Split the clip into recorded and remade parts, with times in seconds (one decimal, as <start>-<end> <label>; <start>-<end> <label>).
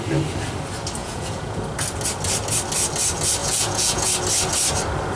0.0-1.0 recorded; 1.0-1.6 remade; 1.6-3.4 recorded; 3.4-4.1 remade; 4.1-5.2 recorded